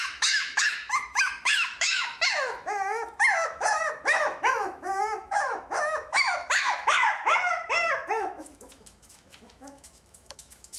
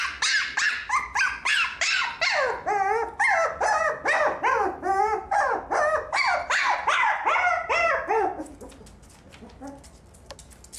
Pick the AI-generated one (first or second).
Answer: first